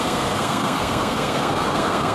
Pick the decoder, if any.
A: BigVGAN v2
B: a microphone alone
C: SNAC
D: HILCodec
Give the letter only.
C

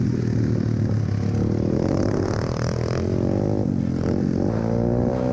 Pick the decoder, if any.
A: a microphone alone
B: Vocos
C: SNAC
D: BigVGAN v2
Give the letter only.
A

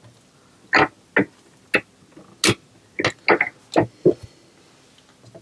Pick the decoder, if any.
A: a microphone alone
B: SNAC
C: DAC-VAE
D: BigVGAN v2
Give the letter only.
A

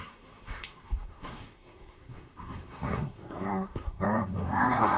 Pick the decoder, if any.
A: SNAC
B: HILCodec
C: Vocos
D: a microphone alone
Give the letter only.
A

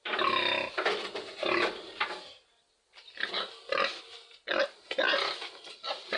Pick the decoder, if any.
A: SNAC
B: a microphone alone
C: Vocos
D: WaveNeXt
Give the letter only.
B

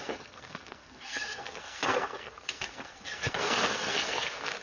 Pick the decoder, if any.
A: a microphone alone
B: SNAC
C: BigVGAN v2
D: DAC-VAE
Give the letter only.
B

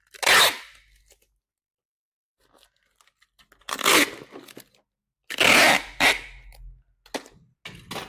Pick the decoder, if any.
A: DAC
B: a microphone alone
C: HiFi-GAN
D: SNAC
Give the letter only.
B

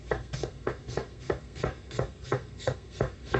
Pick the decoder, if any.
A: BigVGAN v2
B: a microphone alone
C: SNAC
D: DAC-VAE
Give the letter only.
C